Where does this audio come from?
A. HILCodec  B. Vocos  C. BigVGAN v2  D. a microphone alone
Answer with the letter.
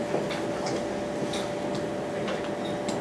D